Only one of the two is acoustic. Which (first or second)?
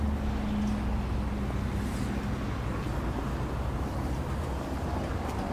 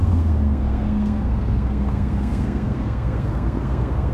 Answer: first